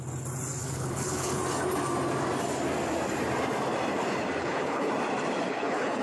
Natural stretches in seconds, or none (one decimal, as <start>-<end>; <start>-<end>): 0.0-0.6; 1.4-4.4; 4.9-5.5